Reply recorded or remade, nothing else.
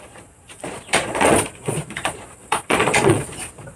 remade